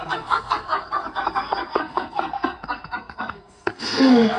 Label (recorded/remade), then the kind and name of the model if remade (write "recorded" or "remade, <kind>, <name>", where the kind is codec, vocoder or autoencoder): remade, codec, SNAC